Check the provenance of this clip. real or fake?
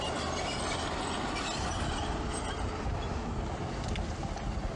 real